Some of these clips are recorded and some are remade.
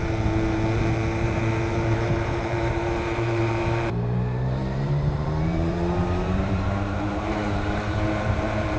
remade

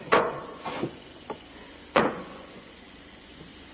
remade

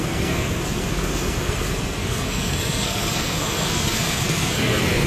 remade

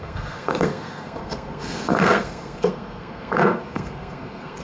remade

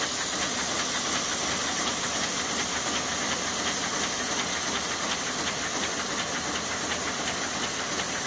recorded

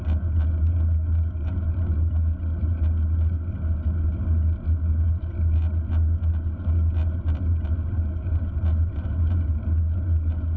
recorded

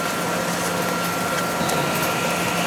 recorded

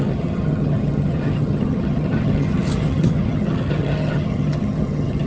remade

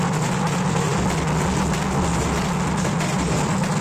recorded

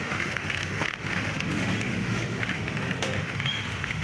remade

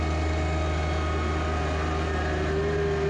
recorded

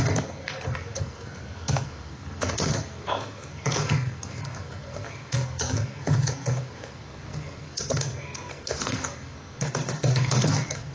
remade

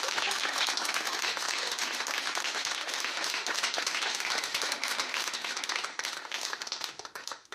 remade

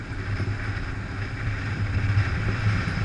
recorded